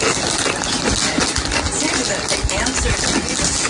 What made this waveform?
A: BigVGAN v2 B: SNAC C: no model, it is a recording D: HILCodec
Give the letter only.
C